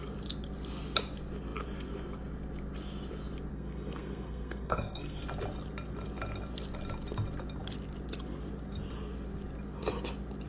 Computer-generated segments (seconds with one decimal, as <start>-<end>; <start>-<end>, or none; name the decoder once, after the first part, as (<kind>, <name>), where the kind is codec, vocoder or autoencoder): 3.5-5.2 (codec, SNAC)